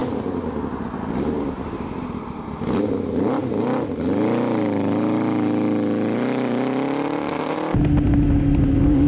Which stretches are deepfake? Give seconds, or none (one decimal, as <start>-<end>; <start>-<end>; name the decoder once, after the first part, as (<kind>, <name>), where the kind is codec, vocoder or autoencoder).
none